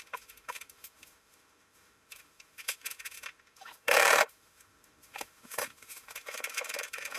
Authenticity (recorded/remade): remade